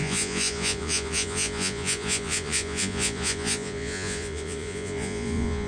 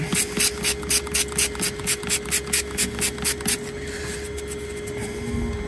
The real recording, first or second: second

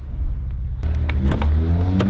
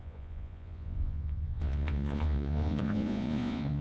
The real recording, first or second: first